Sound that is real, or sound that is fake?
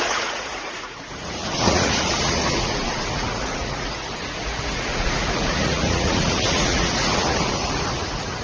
fake